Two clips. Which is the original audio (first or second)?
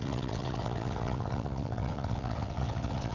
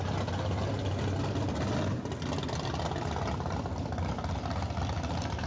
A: second